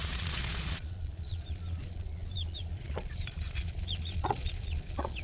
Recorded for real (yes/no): no